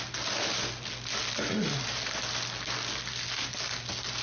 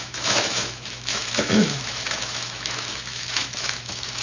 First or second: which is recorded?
first